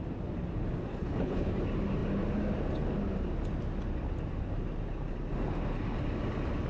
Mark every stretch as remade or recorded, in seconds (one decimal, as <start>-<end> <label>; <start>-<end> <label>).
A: 0.0-0.9 recorded; 0.9-1.5 remade; 1.5-6.7 recorded